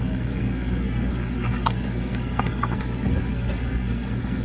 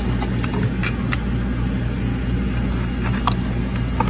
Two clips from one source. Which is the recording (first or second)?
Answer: second